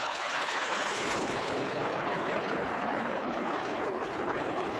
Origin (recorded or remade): remade